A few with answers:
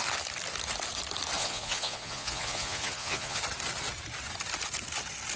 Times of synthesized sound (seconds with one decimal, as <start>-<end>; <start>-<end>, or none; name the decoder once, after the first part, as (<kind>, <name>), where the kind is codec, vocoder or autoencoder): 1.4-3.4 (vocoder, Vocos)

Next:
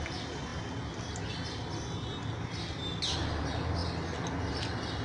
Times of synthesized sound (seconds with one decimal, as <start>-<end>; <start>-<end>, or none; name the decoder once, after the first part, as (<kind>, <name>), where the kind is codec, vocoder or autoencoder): none

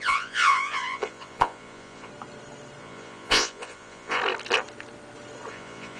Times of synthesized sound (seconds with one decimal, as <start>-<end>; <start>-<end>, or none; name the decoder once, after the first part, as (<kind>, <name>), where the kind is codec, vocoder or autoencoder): 0.0-2.1 (vocoder, Vocos); 2.8-4.2; 5.5-6.0

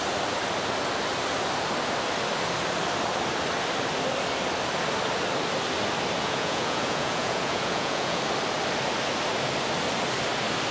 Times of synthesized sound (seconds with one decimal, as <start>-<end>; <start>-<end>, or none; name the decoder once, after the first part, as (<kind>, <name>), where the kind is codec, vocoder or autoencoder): 6.2-8.2 (vocoder, Vocos)

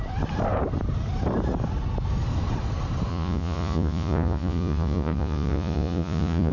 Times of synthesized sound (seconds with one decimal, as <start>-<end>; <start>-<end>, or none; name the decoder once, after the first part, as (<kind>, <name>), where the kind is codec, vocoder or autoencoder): 3.1-6.5 (vocoder, Vocos)